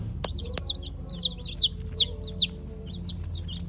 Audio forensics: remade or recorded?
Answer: recorded